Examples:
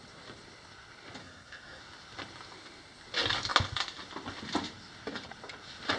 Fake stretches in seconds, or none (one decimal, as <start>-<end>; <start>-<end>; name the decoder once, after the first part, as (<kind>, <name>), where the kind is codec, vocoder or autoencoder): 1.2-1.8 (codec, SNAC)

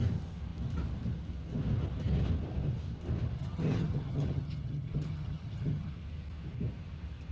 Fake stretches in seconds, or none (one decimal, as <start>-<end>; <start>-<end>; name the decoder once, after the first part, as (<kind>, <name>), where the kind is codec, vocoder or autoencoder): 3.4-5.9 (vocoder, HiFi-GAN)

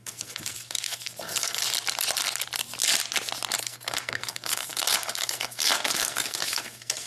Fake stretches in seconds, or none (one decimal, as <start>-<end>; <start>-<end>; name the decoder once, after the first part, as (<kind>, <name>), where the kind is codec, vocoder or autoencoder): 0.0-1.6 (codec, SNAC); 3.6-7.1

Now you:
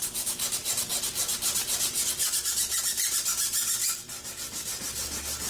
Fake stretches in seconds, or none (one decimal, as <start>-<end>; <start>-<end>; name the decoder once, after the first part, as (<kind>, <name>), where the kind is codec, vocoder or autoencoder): none

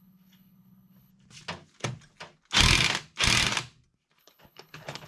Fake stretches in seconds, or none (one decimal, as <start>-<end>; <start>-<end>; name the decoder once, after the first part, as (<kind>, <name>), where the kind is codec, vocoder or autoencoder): 0.0-1.1 (codec, HILCodec); 4.2-5.1

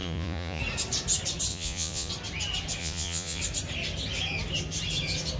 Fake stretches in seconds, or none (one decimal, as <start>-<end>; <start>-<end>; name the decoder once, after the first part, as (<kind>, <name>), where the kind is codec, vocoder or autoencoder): 0.0-0.6 (vocoder, Vocos); 1.5-2.1; 2.8-3.4